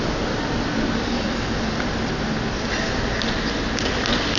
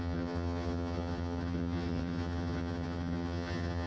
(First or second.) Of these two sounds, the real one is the first